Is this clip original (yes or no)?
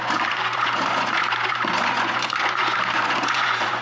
no